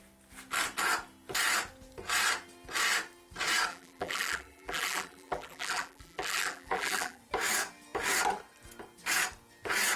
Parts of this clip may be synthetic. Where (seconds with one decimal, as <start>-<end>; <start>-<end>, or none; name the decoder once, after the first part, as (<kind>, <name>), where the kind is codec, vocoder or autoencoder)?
3.7-7.2 (vocoder, BigVGAN v2)